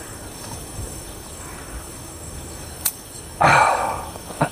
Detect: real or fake fake